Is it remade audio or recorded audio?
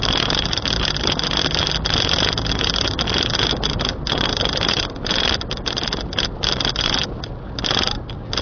recorded